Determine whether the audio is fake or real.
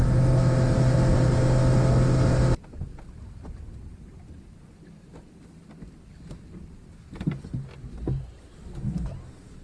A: real